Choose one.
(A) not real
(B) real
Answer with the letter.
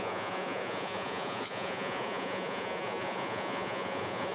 A